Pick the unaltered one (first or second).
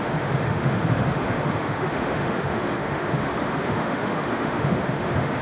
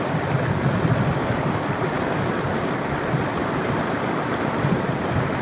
second